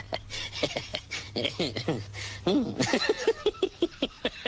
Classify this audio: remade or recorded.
recorded